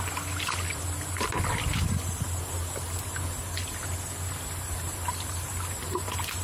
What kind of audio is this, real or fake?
real